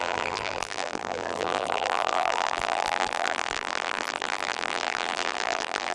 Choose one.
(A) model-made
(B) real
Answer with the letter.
A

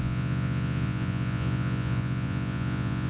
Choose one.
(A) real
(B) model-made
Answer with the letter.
B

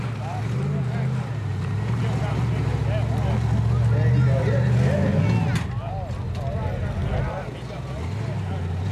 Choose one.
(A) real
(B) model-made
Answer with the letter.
A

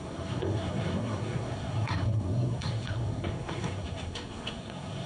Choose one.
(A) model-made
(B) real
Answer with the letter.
A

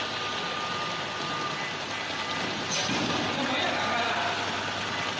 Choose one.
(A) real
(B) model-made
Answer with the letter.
A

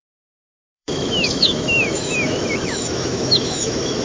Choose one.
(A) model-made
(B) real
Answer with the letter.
A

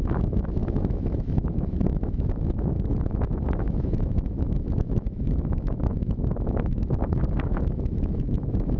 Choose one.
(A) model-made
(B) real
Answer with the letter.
A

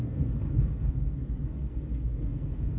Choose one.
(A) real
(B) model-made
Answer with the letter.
B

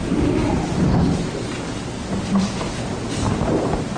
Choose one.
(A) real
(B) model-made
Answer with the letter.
A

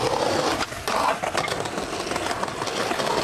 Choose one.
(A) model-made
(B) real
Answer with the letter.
B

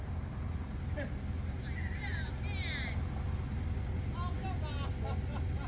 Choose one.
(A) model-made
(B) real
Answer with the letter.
B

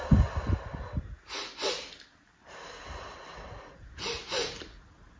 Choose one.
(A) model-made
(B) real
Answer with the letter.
B